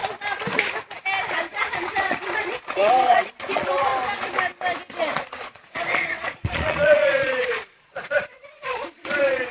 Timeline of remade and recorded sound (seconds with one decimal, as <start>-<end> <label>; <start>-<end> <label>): 0.0-1.3 recorded; 1.3-3.9 remade; 3.9-5.0 recorded; 5.0-9.5 remade